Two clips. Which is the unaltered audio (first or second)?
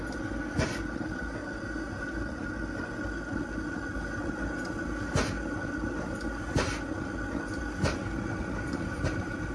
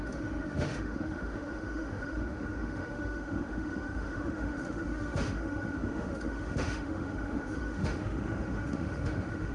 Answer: first